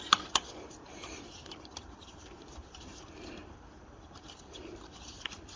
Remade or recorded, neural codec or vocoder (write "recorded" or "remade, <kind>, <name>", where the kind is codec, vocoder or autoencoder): remade, vocoder, BigVGAN v2